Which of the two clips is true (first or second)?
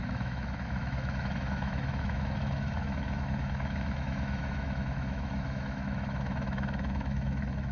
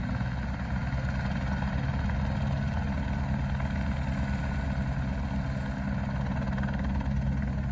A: second